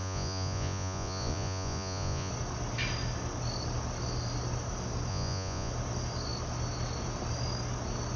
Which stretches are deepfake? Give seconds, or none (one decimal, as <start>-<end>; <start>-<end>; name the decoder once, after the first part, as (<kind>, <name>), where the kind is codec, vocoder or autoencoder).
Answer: 0.0-2.3 (vocoder, Vocos); 5.1-5.7